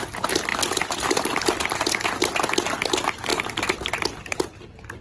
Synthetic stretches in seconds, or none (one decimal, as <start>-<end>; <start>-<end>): none